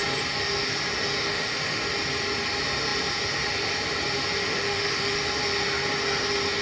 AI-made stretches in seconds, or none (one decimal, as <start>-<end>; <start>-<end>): 1.2-1.8; 4.5-5.2